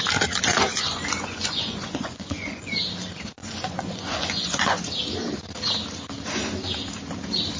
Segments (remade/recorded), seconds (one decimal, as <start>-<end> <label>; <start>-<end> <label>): 0.0-0.5 recorded; 0.5-2.8 remade; 2.8-3.4 recorded; 3.4-4.8 remade; 4.8-7.6 recorded